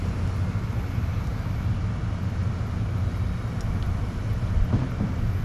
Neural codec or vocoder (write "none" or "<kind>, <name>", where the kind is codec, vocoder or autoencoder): none